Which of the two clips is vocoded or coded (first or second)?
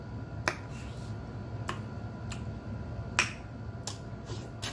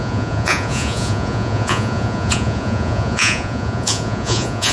second